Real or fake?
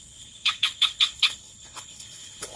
fake